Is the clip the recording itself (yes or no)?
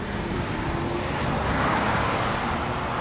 yes